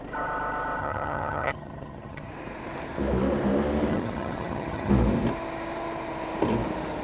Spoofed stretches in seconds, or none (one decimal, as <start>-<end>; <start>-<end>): 0.8-2.3; 3.9-4.9